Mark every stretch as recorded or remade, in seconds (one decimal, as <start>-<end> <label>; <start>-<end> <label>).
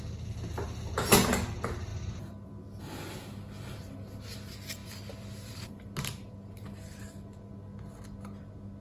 0.0-1.9 recorded; 1.9-2.8 remade; 2.8-4.8 recorded; 4.8-5.7 remade; 5.7-8.8 recorded